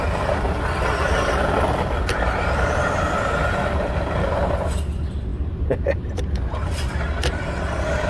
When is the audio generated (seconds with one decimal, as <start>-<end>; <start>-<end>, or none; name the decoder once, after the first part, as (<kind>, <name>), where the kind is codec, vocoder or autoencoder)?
none

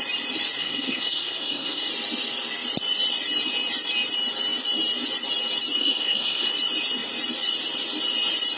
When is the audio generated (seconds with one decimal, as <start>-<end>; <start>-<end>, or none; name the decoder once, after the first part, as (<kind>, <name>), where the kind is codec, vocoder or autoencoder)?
0.6-1.9 (codec, SNAC); 5.8-6.5

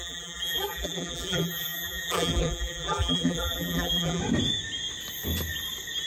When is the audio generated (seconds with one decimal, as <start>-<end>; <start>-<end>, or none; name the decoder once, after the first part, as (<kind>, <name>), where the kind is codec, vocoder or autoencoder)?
0.0-4.2 (vocoder, BigVGAN v2)

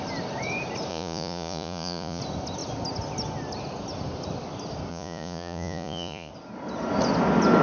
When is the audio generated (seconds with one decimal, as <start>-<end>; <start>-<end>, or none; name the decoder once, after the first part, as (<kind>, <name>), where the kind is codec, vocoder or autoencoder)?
0.9-2.2 (vocoder, Vocos); 4.9-6.3

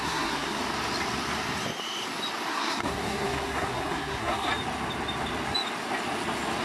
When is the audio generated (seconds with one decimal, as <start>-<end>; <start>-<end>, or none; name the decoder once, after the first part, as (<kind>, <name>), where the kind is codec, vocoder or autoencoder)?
0.0-0.6 (codec, SNAC); 2.5-4.5

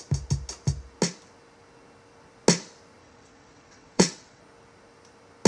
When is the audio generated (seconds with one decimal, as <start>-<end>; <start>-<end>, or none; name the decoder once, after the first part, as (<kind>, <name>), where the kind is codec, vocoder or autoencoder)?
3.0-4.4 (vocoder, WaveNeXt)